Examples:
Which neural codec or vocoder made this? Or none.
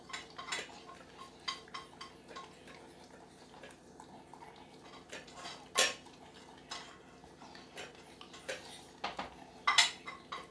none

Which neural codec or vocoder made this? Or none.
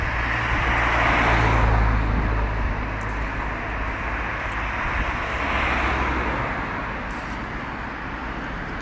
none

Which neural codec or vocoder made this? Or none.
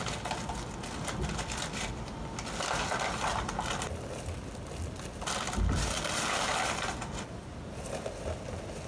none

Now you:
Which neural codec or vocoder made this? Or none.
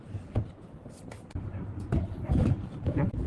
vocoder, BigVGAN v2